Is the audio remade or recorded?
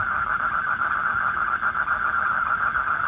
recorded